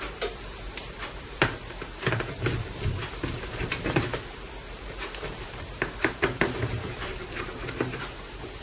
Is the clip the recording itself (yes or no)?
no